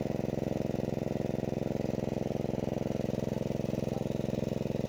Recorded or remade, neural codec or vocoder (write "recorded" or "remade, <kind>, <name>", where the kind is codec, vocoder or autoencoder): recorded